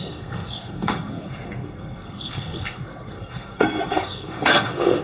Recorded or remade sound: remade